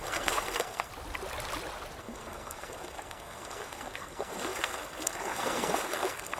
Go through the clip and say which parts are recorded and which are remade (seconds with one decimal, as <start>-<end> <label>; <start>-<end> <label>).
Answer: 0.0-0.9 remade; 0.9-2.0 recorded; 2.0-6.4 remade